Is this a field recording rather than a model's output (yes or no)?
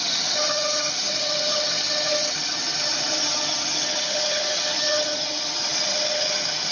no